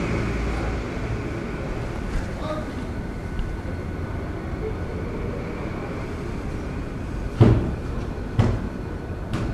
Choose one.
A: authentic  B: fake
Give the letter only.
A